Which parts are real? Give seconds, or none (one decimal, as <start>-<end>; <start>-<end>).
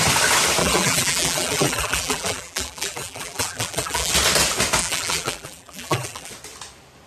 0.0-0.6; 4.1-4.8; 6.3-7.1